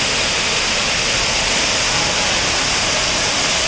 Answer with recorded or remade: recorded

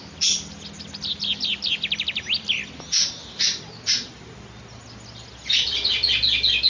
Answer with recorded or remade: recorded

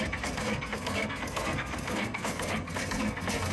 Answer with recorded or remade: remade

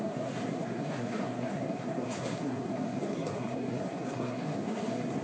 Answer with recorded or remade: remade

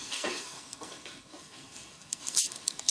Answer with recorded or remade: remade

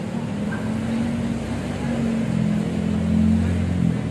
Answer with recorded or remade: recorded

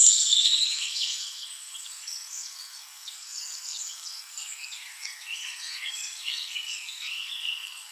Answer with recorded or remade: remade